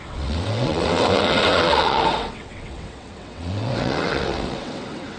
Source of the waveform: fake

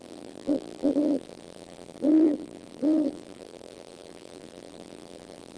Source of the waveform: fake